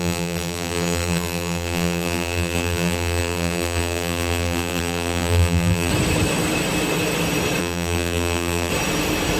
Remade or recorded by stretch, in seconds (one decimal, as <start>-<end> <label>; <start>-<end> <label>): 0.0-5.9 remade; 5.9-7.6 recorded; 7.6-8.7 remade; 8.7-9.4 recorded